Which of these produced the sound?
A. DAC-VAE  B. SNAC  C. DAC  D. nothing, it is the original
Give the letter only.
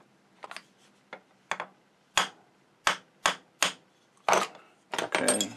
D